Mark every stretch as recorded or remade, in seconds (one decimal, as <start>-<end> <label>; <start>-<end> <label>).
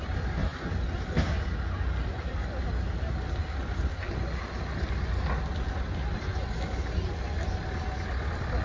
0.0-8.6 recorded